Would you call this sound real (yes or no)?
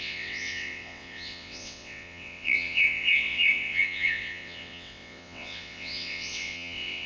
no